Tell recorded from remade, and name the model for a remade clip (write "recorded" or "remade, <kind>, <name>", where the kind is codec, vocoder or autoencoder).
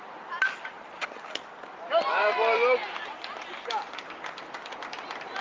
recorded